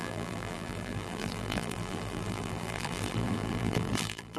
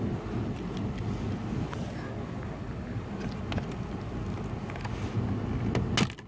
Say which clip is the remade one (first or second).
first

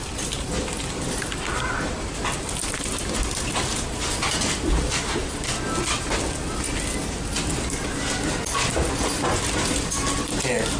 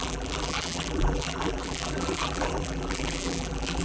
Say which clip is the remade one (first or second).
second